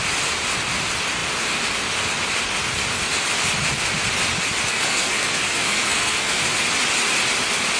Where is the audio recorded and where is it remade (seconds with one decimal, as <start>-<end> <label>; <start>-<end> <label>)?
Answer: 0.0-4.7 recorded; 4.7-6.4 remade; 6.4-7.8 recorded